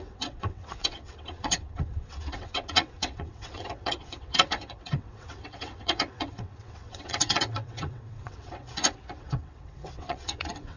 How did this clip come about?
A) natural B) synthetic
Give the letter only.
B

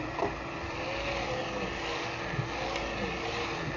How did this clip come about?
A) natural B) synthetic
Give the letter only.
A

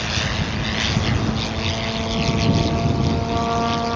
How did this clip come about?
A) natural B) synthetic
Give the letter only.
A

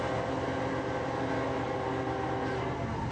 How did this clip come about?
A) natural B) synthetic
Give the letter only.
A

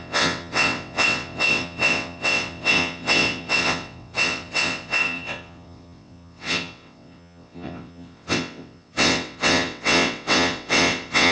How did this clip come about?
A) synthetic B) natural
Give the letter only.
A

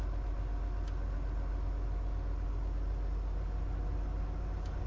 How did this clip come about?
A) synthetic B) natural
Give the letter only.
B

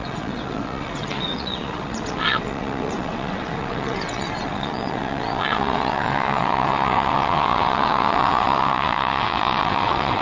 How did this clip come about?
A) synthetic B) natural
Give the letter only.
A